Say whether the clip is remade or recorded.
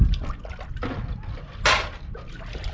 recorded